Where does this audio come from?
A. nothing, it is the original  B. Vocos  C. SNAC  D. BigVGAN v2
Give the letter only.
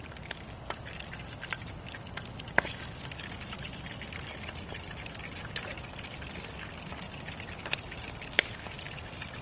A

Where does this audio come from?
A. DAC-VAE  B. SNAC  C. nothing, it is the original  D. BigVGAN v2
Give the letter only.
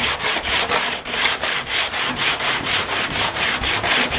D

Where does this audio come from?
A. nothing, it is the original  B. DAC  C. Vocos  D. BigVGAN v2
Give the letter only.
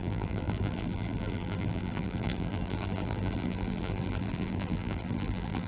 D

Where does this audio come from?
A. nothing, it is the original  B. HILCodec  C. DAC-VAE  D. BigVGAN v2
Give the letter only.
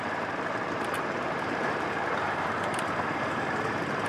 D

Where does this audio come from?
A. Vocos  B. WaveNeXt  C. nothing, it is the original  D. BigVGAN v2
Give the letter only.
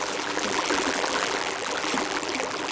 D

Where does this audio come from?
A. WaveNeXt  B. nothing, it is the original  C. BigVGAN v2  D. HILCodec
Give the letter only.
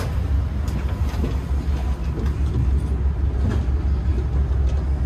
B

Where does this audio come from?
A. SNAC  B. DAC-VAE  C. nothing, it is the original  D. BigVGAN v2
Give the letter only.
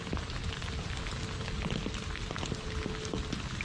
C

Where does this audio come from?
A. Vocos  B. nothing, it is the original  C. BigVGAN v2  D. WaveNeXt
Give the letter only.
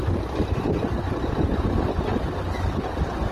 B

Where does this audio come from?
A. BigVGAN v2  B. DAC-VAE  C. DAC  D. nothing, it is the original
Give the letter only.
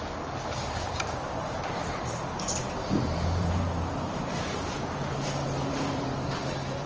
A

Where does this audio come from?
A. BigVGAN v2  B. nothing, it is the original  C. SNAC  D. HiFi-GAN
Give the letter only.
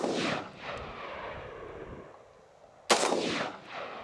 B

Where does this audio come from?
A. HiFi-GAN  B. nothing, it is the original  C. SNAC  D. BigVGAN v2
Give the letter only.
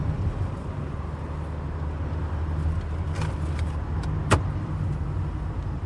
D